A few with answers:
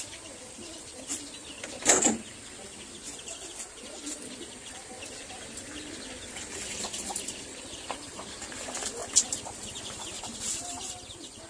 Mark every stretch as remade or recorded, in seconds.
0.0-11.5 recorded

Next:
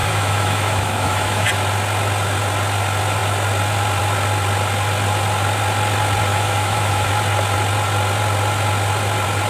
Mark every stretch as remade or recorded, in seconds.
0.0-1.5 remade; 1.5-6.3 recorded; 6.3-7.1 remade; 7.1-9.5 recorded